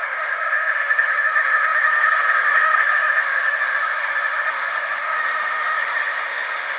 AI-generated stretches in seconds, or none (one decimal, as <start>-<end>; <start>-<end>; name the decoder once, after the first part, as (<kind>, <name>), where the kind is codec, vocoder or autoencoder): 0.0-6.8 (autoencoder, DAC-VAE)